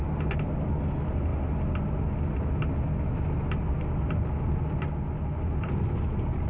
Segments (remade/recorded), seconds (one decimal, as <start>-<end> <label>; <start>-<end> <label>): 0.0-6.5 recorded

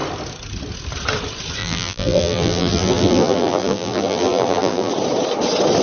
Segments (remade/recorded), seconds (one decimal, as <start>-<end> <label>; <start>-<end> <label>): 0.0-1.6 recorded; 1.6-4.9 remade; 4.9-5.8 recorded